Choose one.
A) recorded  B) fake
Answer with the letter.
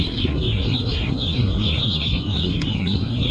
B